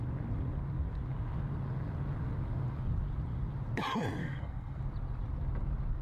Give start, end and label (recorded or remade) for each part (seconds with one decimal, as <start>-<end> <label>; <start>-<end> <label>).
0.0-4.2 recorded; 4.2-4.8 remade; 4.8-6.0 recorded